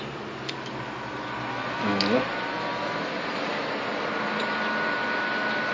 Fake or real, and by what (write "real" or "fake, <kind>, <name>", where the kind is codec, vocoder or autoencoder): real